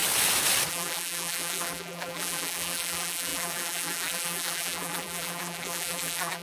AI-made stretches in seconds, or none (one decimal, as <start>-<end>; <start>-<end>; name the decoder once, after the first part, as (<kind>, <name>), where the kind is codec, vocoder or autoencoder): 0.7-6.4 (vocoder, BigVGAN v2)